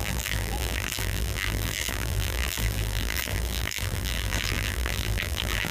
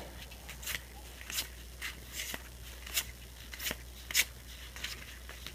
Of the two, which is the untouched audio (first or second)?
second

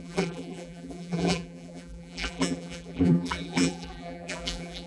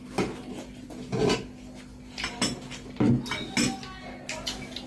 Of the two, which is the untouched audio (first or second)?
second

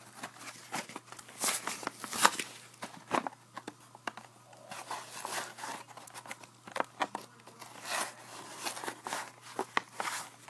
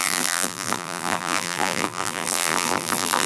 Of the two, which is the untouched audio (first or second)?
first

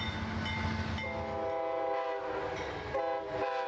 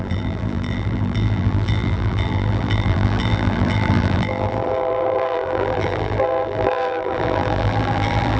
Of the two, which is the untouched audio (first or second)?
first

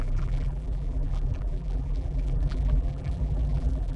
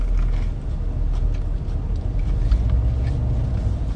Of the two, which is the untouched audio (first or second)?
second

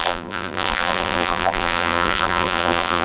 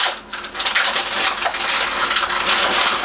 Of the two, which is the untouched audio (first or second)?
second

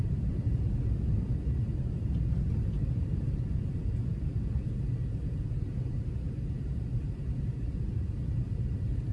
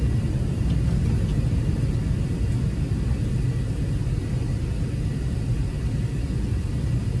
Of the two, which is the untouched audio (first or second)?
second